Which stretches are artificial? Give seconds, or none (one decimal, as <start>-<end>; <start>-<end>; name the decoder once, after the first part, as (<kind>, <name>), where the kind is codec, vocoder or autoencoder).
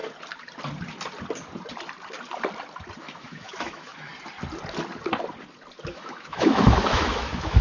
3.0-4.1 (autoencoder, DAC-VAE); 5.9-7.6